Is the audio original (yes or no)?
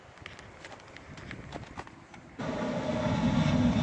yes